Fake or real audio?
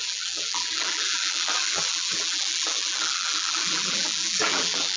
fake